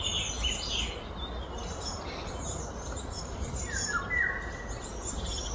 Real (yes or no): yes